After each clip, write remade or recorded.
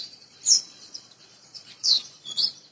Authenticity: remade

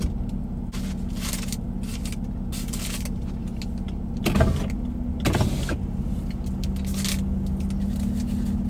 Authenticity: recorded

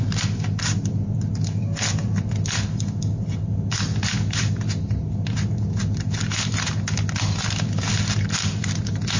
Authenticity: recorded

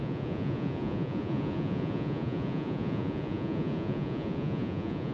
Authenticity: remade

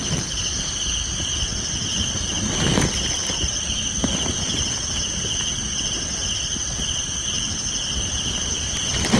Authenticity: recorded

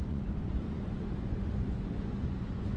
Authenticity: remade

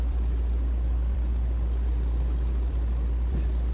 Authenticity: recorded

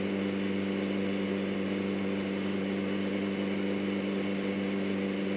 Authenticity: recorded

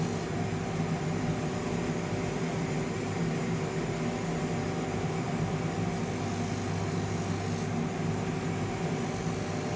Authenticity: recorded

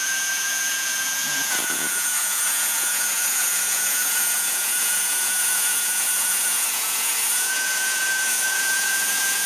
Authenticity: remade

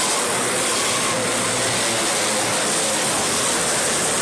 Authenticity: recorded